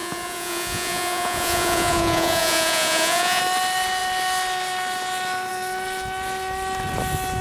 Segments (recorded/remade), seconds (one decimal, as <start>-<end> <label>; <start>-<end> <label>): 0.0-3.4 remade; 3.4-7.4 recorded